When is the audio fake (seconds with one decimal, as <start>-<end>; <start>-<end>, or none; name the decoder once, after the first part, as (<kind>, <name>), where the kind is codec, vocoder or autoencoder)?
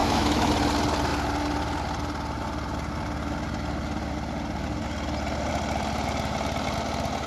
0.0-0.5 (autoencoder, DAC-VAE)